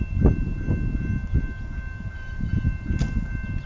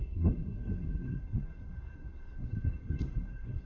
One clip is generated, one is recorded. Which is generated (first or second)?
second